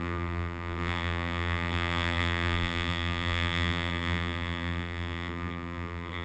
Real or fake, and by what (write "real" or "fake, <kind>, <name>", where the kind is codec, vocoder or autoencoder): fake, vocoder, BigVGAN v2